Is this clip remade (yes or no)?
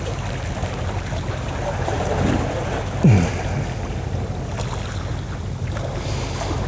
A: no